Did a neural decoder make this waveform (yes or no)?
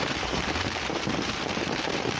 yes